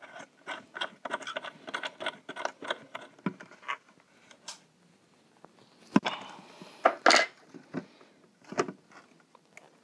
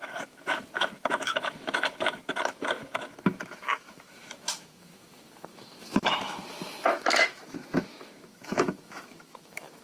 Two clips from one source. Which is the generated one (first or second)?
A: second